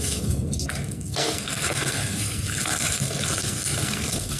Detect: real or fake fake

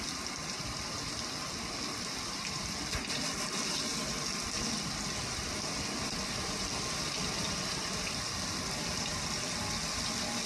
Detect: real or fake real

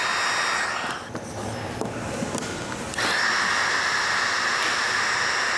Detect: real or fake real